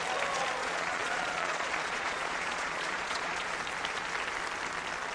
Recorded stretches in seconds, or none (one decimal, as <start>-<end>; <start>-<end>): 0.0-0.6; 3.5-5.1